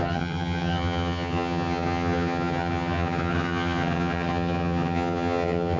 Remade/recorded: remade